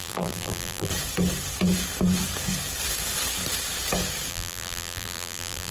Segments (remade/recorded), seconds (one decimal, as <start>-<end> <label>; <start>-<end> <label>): 0.0-0.9 remade; 0.9-4.3 recorded; 4.3-5.7 remade